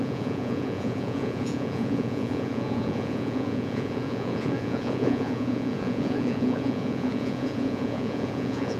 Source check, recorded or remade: remade